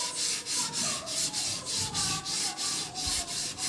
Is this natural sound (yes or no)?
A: yes